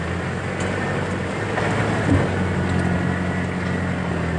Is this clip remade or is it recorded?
recorded